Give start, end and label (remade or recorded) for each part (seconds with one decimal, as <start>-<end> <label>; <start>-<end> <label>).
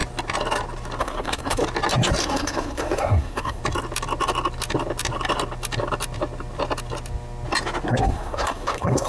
0.0-1.0 recorded; 1.0-1.6 remade; 1.6-2.2 recorded; 2.2-3.6 remade; 3.6-8.0 recorded; 8.0-9.1 remade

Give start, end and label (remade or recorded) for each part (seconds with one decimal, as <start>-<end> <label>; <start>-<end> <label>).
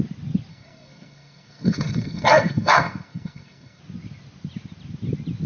0.0-0.5 recorded; 0.5-3.8 remade; 3.8-5.5 recorded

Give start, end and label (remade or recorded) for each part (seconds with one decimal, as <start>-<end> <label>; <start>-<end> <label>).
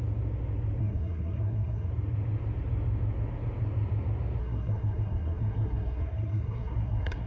0.0-0.8 recorded; 0.8-1.9 remade; 1.9-4.4 recorded; 4.4-7.3 remade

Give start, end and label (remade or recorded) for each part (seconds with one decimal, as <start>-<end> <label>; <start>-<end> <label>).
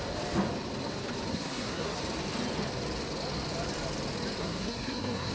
0.0-1.3 recorded; 1.3-2.0 remade; 2.0-4.4 recorded; 4.4-5.3 remade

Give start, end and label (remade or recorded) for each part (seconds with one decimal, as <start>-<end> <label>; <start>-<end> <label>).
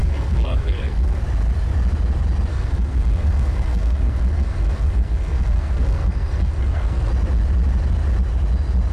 0.0-1.2 remade; 1.2-2.5 recorded; 2.5-7.1 remade; 7.1-8.9 recorded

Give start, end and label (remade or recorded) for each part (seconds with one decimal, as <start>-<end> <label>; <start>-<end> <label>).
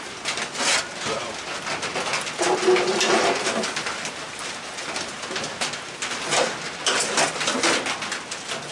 0.0-8.7 recorded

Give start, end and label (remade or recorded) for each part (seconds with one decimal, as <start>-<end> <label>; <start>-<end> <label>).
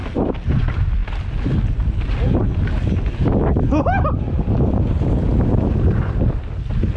0.0-7.0 recorded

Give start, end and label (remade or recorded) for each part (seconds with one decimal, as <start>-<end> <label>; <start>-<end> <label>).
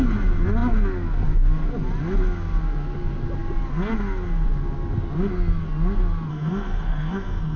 0.0-6.3 recorded; 6.3-7.6 remade